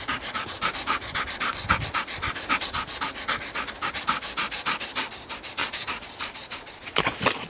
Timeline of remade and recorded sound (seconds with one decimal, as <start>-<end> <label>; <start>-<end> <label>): 0.0-5.6 recorded; 5.6-7.0 remade; 7.0-7.5 recorded